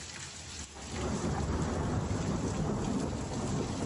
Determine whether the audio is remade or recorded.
recorded